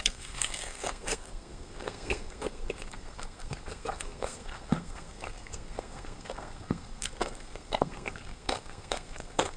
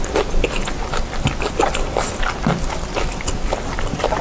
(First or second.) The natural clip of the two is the second